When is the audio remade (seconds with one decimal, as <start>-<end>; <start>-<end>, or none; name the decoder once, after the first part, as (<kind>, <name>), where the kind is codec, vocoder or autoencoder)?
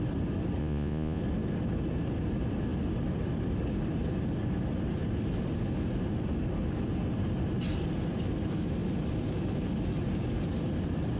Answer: 0.6-1.2 (vocoder, Vocos)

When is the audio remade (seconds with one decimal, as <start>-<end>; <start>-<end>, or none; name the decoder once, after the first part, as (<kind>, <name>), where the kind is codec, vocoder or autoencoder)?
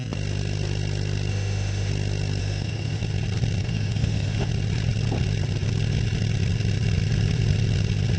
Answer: 1.3-1.9 (autoencoder, DAC-VAE); 2.4-3.0; 3.6-4.5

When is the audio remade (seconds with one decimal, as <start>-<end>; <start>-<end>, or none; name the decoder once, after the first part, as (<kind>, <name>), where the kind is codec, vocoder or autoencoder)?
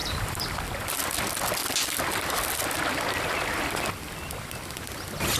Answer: 0.0-0.6 (vocoder, BigVGAN v2)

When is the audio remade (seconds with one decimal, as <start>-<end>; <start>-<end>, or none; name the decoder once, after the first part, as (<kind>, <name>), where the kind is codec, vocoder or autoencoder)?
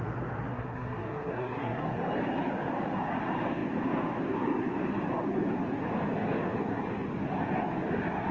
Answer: 0.5-2.0 (codec, SNAC)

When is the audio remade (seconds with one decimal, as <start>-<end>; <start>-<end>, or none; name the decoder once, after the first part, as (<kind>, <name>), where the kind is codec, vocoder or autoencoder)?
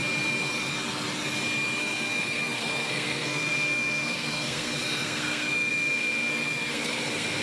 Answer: 1.8-7.4 (codec, SNAC)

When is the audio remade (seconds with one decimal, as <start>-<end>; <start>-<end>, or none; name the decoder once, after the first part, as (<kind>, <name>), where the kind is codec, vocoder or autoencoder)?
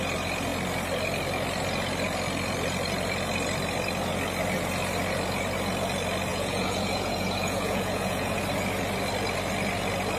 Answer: 6.3-8.4 (vocoder, Vocos)